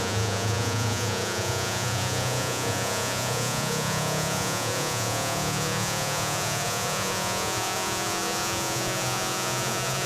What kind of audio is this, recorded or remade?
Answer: remade